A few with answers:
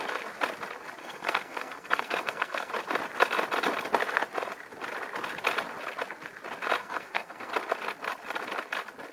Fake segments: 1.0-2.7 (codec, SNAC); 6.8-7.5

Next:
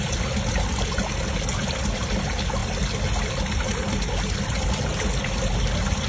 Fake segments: none

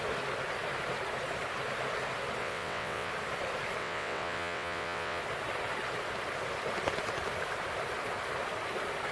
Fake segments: 2.4-3.1 (vocoder, WaveNeXt); 3.8-5.2

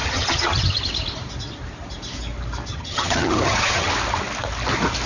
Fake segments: 0.0-0.8 (vocoder, HiFi-GAN); 2.7-3.9

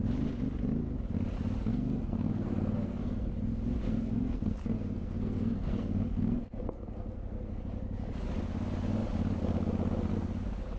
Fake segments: 1.7-3.3 (codec, SNAC); 3.8-7.6

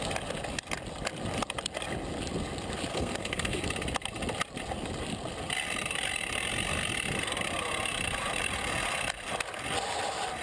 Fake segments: 2.9-3.6 (codec, SNAC)

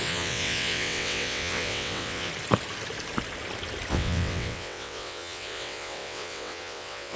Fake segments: 0.0-2.3 (vocoder, WaveNeXt); 3.9-7.2